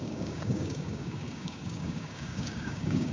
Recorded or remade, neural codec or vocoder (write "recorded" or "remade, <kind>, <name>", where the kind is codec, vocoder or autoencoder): remade, codec, DAC